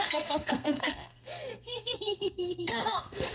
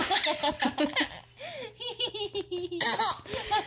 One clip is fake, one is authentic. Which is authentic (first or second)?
second